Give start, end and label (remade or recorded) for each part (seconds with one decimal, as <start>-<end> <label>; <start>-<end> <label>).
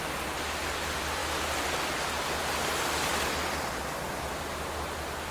0.0-5.3 recorded